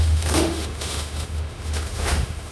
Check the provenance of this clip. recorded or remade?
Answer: remade